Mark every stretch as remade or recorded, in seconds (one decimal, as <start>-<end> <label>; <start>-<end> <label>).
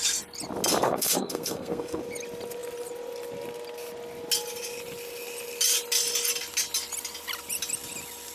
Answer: 0.0-0.8 recorded; 0.8-2.0 remade; 2.0-8.3 recorded